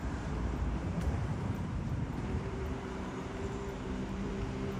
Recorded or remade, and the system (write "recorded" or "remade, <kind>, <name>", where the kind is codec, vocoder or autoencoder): remade, vocoder, BigVGAN v2